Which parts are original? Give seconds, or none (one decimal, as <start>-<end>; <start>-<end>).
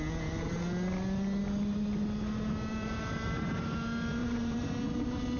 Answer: 0.0-2.7; 3.5-4.2; 4.7-5.4